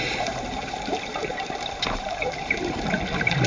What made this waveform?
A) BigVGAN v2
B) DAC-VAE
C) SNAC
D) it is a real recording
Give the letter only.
A